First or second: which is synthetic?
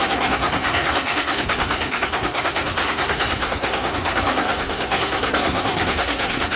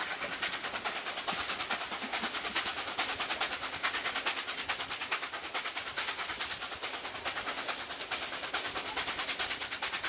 first